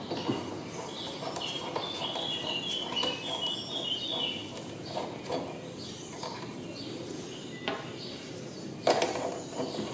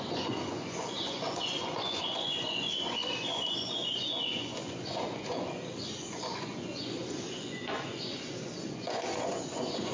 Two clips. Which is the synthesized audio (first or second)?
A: second